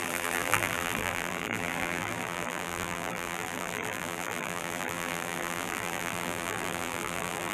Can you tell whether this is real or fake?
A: fake